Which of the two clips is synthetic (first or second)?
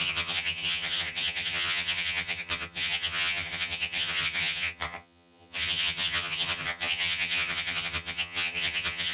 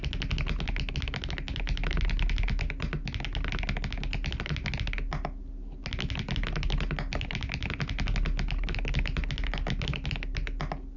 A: first